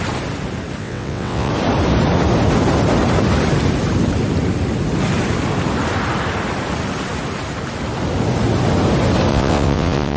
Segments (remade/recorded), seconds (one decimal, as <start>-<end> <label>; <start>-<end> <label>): 0.0-0.8 recorded; 0.8-1.5 remade; 1.5-9.3 recorded; 9.3-10.2 remade